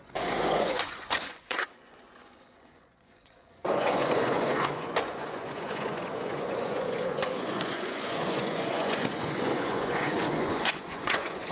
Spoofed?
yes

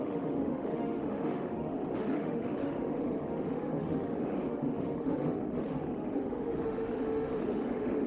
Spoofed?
yes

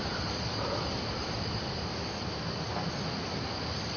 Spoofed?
no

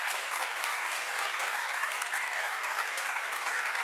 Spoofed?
yes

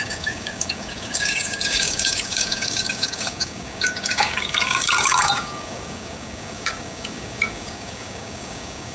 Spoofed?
yes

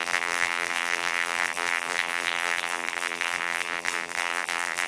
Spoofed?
yes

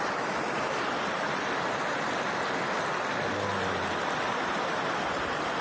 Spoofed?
no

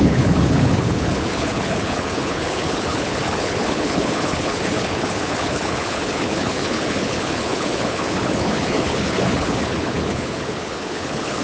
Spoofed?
yes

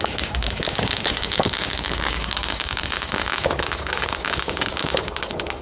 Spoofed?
yes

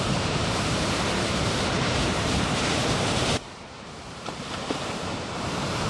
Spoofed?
yes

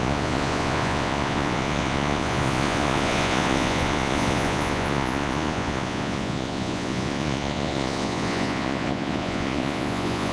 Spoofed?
yes